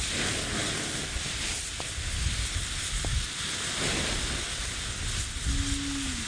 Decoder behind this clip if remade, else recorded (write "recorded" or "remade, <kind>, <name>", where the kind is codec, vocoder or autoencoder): recorded